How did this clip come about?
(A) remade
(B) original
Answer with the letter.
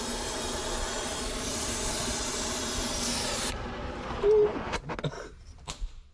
A